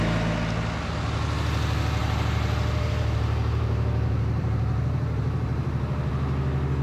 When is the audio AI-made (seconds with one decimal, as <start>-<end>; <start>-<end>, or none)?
2.0-6.1